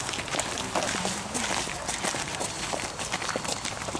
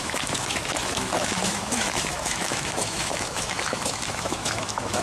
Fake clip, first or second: second